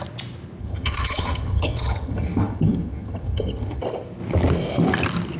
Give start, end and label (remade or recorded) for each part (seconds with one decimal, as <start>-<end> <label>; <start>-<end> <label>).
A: 0.0-0.6 recorded; 0.6-3.8 remade; 3.8-5.4 recorded